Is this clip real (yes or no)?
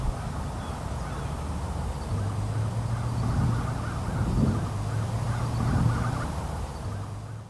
yes